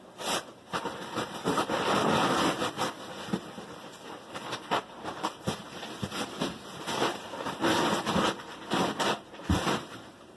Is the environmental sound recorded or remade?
remade